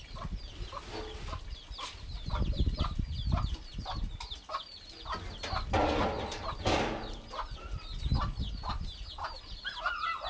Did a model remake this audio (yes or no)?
no